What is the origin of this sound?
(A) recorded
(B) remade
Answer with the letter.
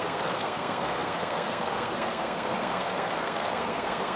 B